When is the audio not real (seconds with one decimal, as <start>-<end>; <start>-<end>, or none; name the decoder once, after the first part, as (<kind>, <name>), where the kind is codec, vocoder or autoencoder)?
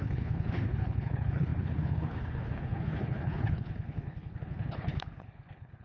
0.0-5.8 (codec, HILCodec)